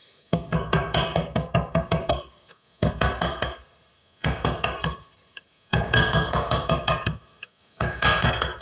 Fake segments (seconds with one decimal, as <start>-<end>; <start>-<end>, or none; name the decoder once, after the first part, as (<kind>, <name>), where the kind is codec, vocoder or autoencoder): 0.0-8.6 (codec, SNAC)